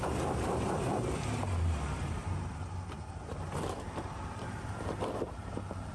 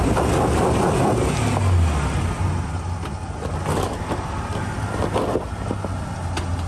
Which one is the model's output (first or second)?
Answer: first